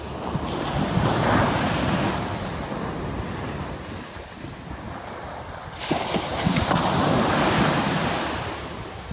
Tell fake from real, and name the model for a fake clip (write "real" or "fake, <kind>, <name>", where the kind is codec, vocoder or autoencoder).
real